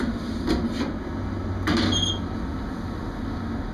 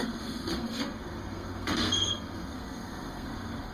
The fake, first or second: second